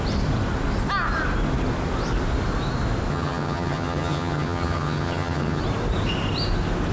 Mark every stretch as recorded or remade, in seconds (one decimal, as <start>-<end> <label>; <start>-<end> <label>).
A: 0.0-3.1 recorded; 3.1-5.6 remade; 5.6-6.9 recorded